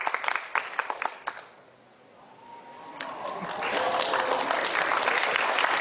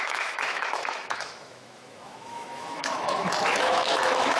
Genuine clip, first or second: first